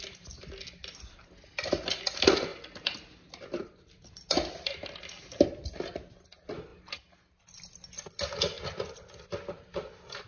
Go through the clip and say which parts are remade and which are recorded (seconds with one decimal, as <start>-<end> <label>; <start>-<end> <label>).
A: 0.0-10.3 recorded